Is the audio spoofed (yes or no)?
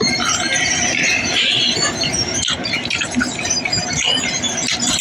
yes